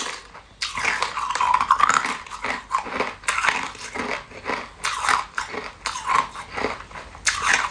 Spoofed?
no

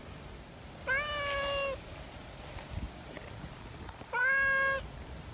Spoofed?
no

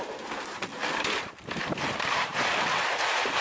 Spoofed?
yes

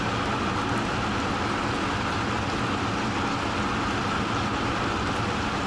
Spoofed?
no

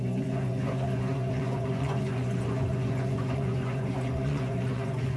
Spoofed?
yes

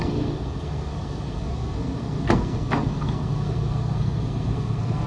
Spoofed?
yes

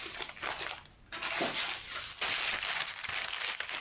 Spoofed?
no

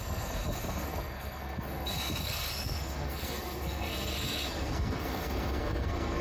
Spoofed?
yes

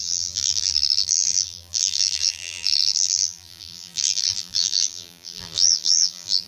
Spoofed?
yes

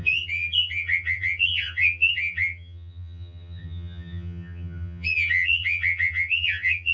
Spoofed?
yes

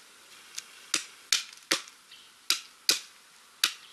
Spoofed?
no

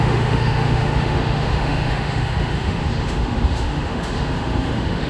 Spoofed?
yes